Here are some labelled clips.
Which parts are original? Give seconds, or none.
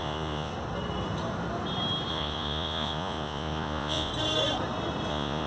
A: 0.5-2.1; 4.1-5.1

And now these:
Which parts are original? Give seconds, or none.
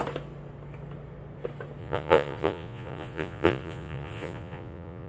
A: 0.0-1.8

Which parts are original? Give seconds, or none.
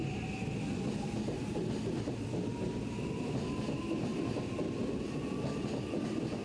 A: 0.0-6.4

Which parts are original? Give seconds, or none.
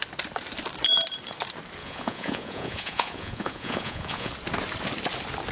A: 0.0-1.8; 4.3-5.5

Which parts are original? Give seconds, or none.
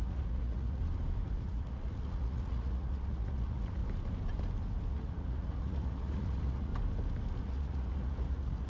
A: 0.8-1.3; 3.8-4.9; 6.7-7.4